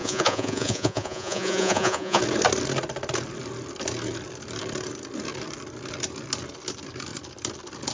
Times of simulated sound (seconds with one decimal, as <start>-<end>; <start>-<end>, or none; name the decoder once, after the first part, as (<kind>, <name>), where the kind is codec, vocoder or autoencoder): 0.0-2.2 (vocoder, Vocos)